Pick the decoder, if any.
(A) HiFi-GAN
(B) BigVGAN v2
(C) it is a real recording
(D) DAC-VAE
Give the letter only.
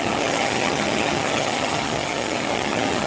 A